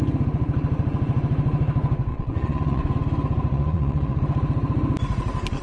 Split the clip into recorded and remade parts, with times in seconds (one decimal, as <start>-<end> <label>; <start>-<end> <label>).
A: 0.0-2.1 recorded; 2.1-2.8 remade; 2.8-3.5 recorded; 3.5-4.2 remade; 4.2-5.6 recorded